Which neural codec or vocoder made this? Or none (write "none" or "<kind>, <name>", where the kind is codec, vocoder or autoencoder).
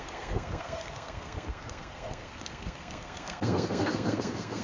codec, SNAC